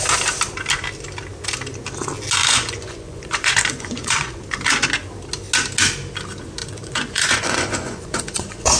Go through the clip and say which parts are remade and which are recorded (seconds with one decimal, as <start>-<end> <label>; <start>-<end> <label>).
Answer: 0.0-2.4 recorded; 2.4-4.4 remade; 4.4-6.6 recorded; 6.6-8.8 remade